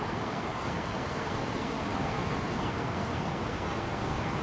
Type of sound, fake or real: fake